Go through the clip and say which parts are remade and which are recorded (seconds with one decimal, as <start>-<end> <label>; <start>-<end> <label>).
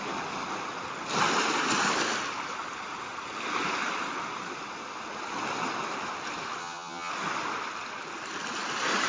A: 0.0-6.6 recorded; 6.6-7.1 remade; 7.1-9.1 recorded